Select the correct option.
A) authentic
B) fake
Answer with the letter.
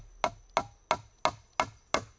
A